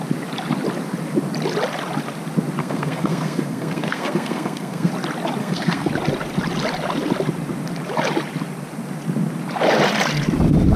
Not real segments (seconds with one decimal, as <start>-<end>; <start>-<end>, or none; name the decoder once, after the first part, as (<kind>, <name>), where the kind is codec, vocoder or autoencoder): 2.6-4.9 (codec, SNAC); 5.4-5.9